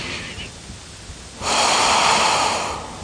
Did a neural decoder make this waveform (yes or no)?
no